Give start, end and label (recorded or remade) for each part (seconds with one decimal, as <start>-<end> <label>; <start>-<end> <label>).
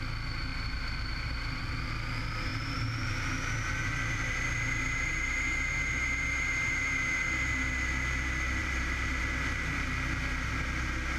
0.0-0.5 recorded; 0.5-1.6 remade; 1.6-2.5 recorded; 2.5-3.1 remade; 3.1-8.6 recorded; 8.6-9.2 remade; 9.2-11.2 recorded